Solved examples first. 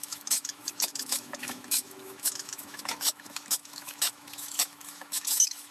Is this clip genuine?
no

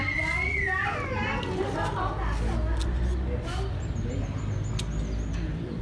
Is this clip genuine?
yes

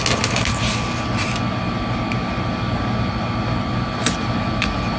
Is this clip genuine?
yes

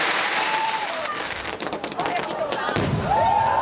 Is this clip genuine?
no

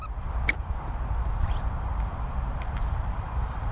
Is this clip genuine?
no